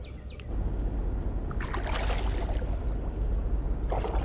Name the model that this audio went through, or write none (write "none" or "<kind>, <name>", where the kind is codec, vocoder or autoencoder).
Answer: none